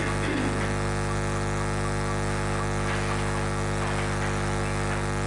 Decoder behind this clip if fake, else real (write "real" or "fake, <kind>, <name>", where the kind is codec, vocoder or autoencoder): real